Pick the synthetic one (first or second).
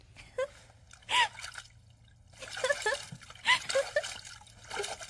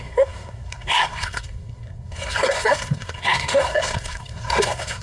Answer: second